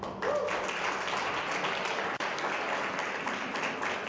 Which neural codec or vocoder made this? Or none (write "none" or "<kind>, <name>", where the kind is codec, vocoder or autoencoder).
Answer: none